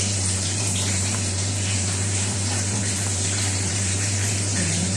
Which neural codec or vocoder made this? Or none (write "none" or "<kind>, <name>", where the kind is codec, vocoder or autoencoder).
vocoder, BigVGAN v2